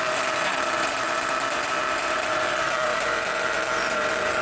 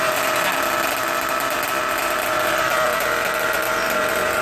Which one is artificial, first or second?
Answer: first